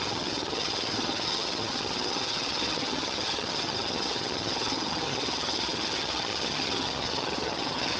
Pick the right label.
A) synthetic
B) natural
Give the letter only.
A